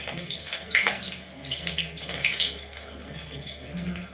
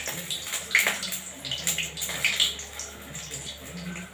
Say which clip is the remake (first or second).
first